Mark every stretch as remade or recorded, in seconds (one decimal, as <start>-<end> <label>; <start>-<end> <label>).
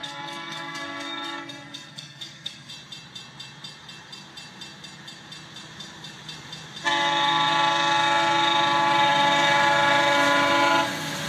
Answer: 0.0-2.7 remade; 2.7-11.3 recorded